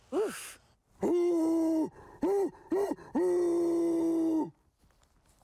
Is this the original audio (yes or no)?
yes